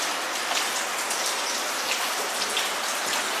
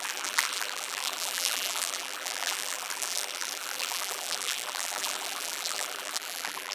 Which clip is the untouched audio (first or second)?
first